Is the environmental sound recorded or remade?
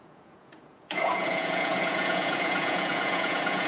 remade